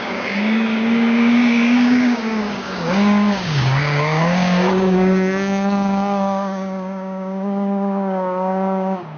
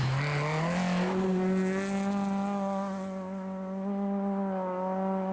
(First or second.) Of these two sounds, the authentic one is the second